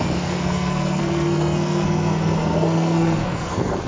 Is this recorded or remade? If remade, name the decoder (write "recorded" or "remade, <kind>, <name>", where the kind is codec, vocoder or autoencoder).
remade, codec, SNAC